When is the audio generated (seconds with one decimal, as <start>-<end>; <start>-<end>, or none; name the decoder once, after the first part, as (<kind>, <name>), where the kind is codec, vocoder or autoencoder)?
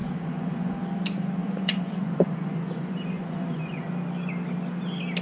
0.0-0.8 (vocoder, Vocos); 1.4-3.9